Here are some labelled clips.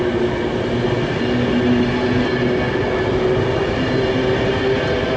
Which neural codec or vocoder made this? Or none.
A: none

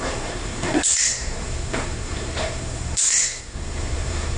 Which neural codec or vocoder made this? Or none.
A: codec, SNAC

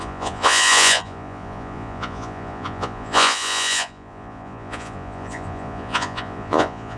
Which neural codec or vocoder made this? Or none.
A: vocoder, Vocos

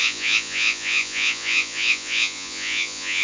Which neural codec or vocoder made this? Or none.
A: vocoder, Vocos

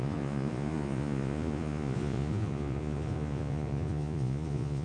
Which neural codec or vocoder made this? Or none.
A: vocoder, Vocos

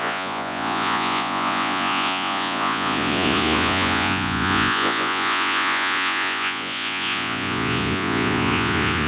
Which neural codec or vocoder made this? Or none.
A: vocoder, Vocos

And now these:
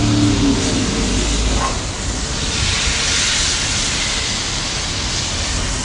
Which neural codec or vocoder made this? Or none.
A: none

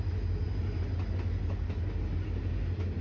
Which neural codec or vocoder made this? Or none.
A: none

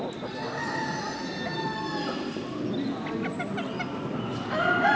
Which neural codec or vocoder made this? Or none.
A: none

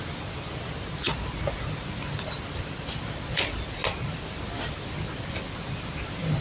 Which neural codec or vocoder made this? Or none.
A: none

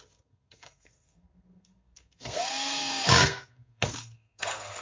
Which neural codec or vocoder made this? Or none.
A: codec, SNAC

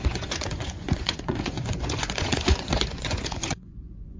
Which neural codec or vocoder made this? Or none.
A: vocoder, Vocos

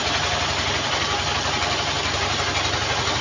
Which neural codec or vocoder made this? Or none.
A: none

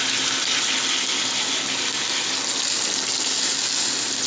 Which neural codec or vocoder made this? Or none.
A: none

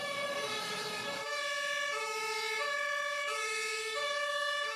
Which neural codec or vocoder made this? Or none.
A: autoencoder, DAC-VAE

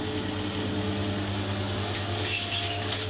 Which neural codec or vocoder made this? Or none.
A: none